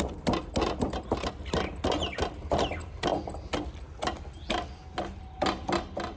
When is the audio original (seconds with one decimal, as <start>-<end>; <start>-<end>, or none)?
0.0-6.2